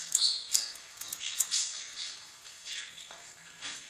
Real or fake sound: fake